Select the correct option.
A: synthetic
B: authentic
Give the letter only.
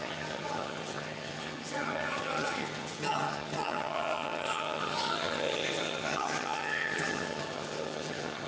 A